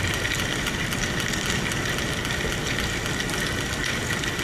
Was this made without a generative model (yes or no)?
yes